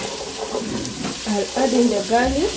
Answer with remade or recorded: recorded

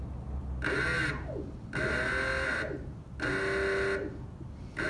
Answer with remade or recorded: recorded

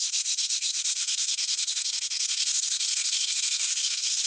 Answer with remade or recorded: remade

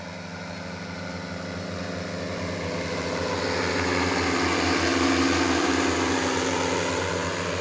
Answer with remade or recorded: recorded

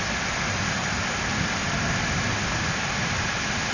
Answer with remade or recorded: recorded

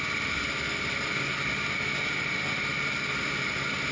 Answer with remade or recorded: recorded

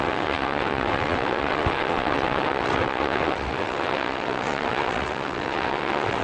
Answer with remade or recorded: remade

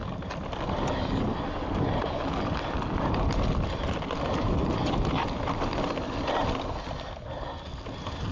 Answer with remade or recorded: recorded